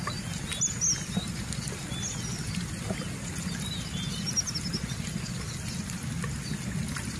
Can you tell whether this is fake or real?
real